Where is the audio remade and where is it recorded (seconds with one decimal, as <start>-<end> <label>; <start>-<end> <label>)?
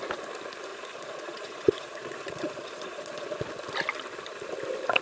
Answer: 0.0-0.7 recorded; 0.7-3.4 remade; 3.4-5.0 recorded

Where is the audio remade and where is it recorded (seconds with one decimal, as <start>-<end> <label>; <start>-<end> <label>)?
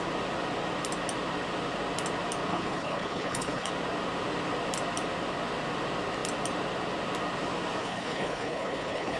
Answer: 0.0-2.5 recorded; 2.5-3.7 remade; 3.7-7.8 recorded; 7.8-9.2 remade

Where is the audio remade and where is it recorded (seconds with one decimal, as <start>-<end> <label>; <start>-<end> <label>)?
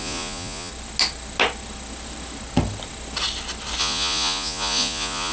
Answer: 0.0-0.7 remade; 0.7-3.8 recorded; 3.8-5.3 remade